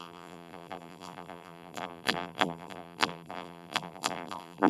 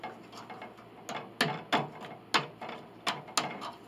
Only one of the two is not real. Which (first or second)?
first